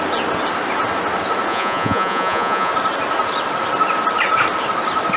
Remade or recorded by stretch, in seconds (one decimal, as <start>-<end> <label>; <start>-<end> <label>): 0.0-1.5 recorded; 1.5-2.7 remade; 2.7-5.2 recorded